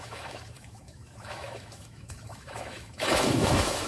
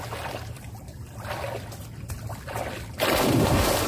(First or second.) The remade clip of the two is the first